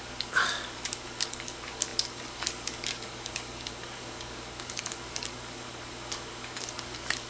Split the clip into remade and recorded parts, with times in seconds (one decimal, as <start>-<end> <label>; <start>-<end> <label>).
0.0-7.3 remade